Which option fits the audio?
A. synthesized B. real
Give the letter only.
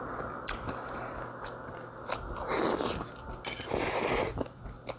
B